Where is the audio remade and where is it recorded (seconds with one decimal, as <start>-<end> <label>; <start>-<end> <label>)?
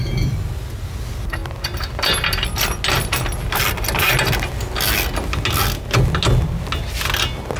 0.0-7.6 recorded